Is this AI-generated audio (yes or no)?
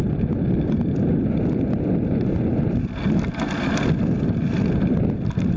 no